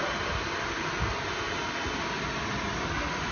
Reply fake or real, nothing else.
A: real